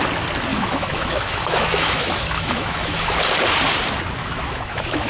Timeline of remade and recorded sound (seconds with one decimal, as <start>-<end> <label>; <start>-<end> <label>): 0.0-0.5 recorded; 0.5-3.2 remade; 3.2-4.2 recorded; 4.2-5.1 remade